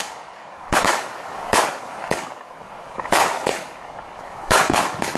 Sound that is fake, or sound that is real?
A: fake